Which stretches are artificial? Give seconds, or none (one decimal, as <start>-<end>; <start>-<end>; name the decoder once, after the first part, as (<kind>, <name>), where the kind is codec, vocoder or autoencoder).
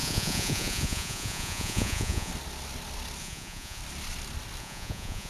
0.0-2.3 (vocoder, Vocos); 3.2-3.8; 4.6-5.3